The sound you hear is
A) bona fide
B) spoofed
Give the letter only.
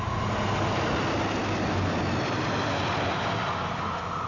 A